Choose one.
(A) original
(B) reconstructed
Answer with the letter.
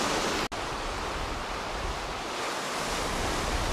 A